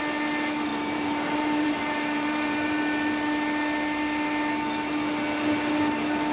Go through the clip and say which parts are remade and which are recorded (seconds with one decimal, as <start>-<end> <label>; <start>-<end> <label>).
0.0-0.7 recorded; 0.7-2.8 remade; 2.8-6.3 recorded